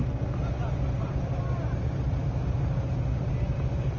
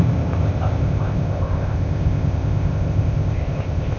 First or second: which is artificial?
second